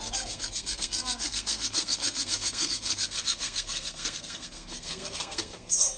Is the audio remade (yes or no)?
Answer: yes